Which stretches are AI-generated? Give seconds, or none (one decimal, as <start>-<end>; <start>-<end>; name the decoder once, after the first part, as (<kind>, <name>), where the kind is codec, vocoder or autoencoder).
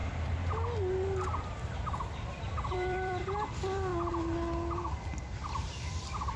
1.5-3.9 (vocoder, BigVGAN v2); 5.5-6.4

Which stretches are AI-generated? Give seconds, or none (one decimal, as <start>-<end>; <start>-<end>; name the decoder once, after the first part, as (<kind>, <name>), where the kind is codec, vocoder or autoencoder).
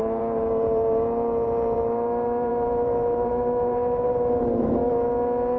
0.0-4.8 (vocoder, BigVGAN v2)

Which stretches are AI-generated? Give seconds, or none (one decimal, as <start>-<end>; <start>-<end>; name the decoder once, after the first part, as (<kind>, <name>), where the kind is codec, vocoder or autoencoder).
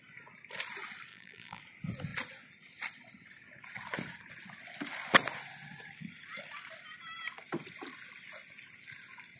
1.1-1.6 (vocoder, BigVGAN v2)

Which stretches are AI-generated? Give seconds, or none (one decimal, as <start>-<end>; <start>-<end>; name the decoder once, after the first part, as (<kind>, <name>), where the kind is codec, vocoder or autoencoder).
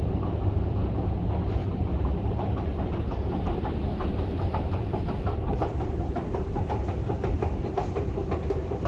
0.0-8.9 (vocoder, BigVGAN v2)